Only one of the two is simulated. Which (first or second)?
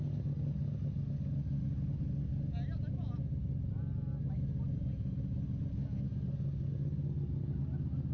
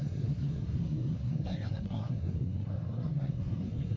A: second